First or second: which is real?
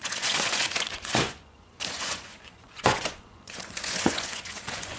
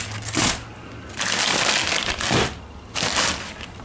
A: second